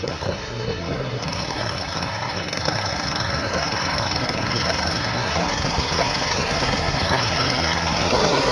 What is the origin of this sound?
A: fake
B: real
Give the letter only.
A